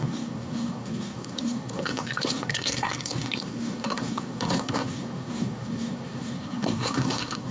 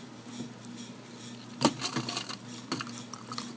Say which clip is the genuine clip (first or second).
second